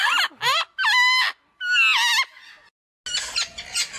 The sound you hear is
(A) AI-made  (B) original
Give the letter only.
B